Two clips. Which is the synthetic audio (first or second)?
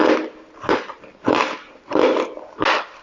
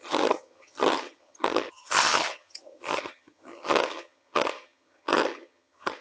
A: second